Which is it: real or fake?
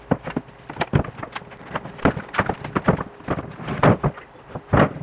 fake